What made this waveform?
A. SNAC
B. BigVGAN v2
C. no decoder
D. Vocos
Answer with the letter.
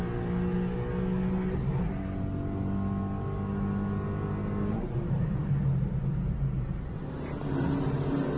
C